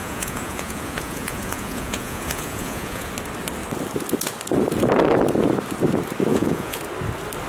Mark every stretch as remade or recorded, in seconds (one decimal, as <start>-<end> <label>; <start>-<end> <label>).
0.0-3.1 remade; 3.1-6.3 recorded; 6.3-6.8 remade; 6.8-7.5 recorded